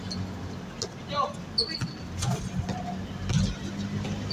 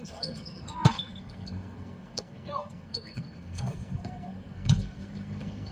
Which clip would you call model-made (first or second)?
second